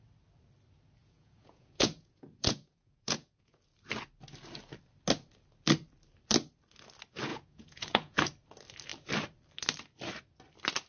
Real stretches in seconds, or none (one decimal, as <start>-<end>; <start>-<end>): 0.0-1.0; 3.6-7.3; 8.2-10.9